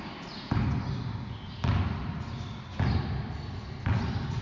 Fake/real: real